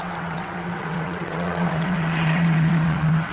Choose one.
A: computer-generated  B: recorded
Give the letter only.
A